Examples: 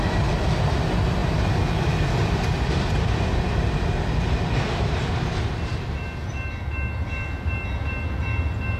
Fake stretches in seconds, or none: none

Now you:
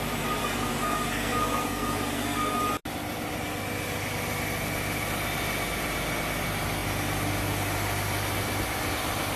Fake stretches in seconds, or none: 0.4-2.6 (codec, SNAC)

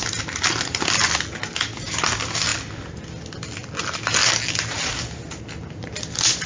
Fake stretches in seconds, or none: none

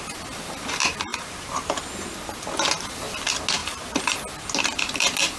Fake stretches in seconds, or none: 1.1-1.8 (vocoder, BigVGAN v2); 3.6-4.1